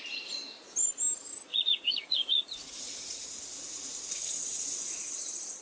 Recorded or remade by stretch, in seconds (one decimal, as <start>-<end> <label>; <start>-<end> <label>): 0.0-1.5 recorded; 1.5-4.9 remade; 4.9-5.6 recorded